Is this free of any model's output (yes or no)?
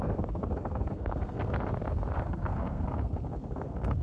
no